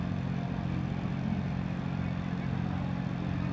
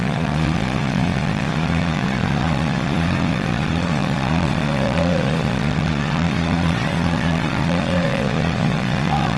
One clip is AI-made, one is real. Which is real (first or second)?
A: first